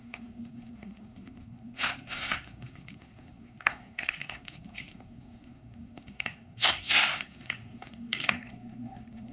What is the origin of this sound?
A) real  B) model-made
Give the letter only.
B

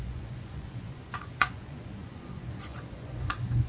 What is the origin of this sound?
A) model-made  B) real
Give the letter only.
A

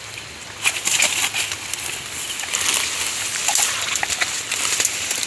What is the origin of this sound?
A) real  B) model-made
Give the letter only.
A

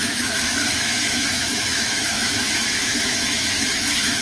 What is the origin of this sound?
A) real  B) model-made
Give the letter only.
B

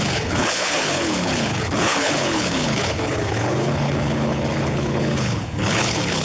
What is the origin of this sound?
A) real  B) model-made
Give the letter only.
B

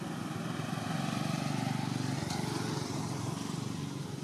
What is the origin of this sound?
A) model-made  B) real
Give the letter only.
B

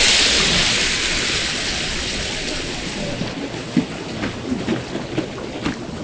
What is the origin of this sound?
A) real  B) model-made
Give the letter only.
A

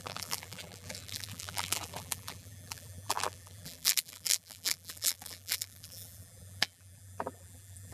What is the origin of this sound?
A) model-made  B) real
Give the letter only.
A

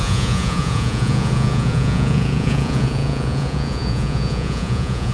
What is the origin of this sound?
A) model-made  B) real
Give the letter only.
A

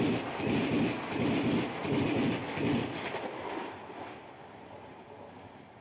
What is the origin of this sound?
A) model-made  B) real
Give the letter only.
B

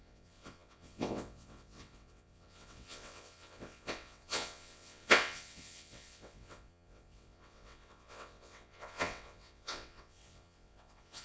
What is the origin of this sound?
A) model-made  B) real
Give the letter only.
A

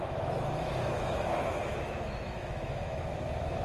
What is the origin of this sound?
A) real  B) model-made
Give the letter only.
B